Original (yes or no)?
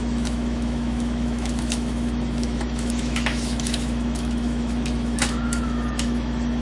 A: no